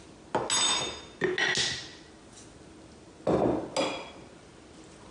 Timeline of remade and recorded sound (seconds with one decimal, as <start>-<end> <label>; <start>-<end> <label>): 0.0-5.1 recorded